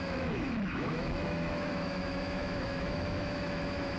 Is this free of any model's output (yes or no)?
no